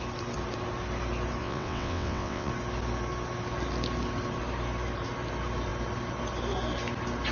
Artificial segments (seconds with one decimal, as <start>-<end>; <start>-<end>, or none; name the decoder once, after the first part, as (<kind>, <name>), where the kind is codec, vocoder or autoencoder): 1.4-2.5 (vocoder, WaveNeXt)